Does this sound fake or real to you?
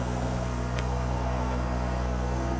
fake